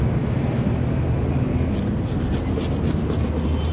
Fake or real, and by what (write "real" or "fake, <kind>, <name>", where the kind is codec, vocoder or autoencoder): real